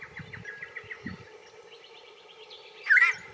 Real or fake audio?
fake